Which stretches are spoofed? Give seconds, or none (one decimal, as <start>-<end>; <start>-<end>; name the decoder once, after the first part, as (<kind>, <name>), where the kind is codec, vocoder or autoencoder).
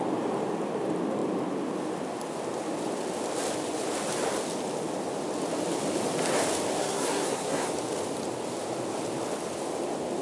6.8-7.7 (codec, SNAC)